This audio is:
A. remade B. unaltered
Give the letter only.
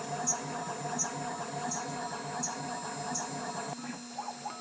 B